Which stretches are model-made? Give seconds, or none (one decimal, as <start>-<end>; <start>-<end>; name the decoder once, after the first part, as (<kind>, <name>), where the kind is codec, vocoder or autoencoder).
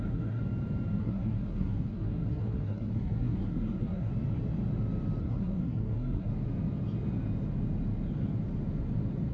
0.0-0.4 (codec, SNAC); 1.0-4.1; 5.2-6.3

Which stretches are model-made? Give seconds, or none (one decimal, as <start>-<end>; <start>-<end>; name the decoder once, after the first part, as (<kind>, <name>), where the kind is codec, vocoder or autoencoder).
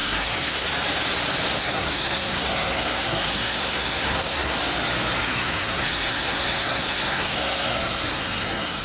0.0-0.7 (codec, SNAC); 1.6-4.6; 5.2-8.8